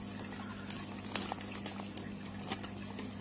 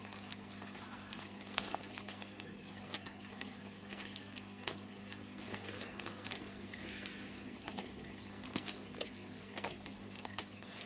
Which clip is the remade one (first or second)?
second